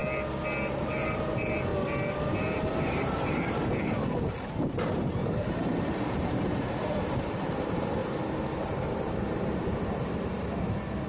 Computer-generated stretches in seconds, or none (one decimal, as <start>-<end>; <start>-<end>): 0.8-1.7; 2.7-8.0; 8.6-11.1